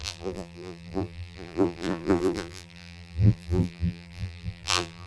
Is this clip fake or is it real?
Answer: fake